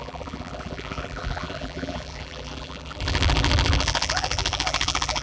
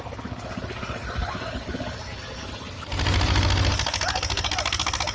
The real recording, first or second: second